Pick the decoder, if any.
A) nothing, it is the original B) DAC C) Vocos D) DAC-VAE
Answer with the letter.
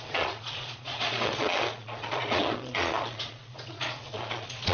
C